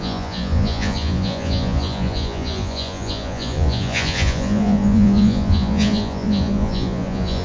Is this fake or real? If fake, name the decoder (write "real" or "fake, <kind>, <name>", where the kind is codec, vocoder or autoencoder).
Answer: fake, vocoder, Vocos